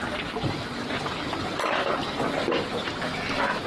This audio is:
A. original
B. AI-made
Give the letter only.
A